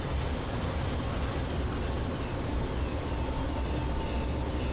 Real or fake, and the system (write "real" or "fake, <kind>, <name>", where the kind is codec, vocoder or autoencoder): real